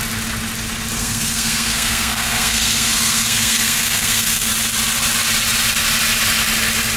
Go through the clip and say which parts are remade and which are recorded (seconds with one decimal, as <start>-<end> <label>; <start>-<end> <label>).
0.0-1.0 recorded; 1.0-4.5 remade; 4.5-7.0 recorded